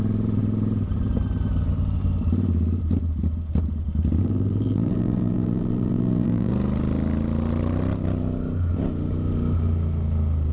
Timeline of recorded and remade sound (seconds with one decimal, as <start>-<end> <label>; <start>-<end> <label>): 0.0-4.2 recorded; 4.2-6.5 remade; 6.5-10.5 recorded